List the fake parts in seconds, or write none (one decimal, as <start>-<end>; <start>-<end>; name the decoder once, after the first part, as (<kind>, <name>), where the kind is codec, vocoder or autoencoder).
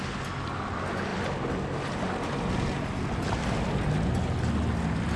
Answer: none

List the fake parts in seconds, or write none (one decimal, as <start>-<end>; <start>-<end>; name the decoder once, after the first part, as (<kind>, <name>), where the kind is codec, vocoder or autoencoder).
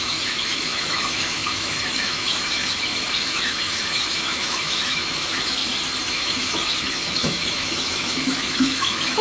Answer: 0.0-5.6 (autoencoder, DAC-VAE); 6.1-9.2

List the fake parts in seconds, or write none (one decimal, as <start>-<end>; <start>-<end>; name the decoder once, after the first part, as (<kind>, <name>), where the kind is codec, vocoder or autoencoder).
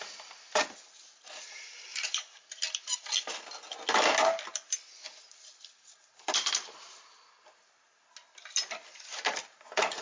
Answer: none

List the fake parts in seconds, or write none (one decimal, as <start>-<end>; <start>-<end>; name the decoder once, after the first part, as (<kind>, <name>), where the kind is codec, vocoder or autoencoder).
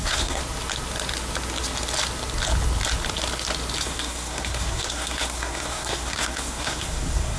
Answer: 0.0-0.4 (codec, SNAC); 3.8-7.4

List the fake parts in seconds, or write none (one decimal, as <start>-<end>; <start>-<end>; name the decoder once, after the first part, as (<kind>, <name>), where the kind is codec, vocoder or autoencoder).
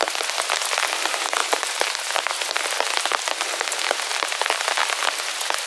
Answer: 1.4-2.3 (vocoder, BigVGAN v2)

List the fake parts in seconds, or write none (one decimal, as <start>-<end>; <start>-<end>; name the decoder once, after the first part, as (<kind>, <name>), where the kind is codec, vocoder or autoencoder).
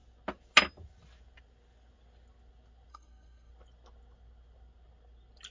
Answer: 2.9-3.5 (codec, SNAC)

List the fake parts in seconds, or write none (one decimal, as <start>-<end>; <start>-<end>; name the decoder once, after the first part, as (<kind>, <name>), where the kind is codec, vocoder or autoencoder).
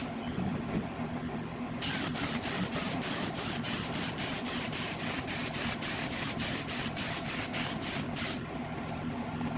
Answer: 2.8-7.9 (vocoder, BigVGAN v2)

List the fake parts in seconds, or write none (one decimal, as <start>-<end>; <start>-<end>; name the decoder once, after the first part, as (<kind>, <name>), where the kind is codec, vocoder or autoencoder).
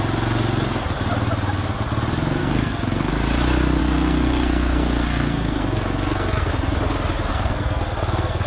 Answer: 2.4-3.1 (codec, SNAC); 3.8-6.5; 7.3-8.5